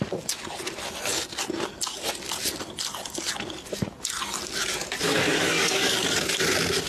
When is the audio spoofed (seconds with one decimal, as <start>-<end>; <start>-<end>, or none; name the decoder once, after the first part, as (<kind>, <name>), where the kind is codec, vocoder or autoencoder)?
5.1-6.2 (codec, DAC)